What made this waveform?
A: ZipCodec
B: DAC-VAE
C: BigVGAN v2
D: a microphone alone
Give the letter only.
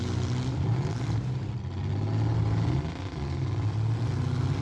D